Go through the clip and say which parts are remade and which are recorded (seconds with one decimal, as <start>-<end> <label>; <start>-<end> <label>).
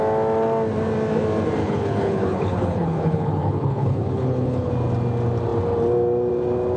0.0-1.6 recorded; 1.6-4.7 remade; 4.7-6.8 recorded